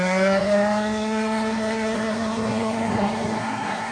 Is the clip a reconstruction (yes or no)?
yes